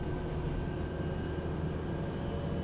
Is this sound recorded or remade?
recorded